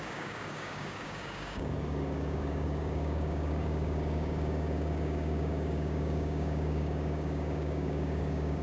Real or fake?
fake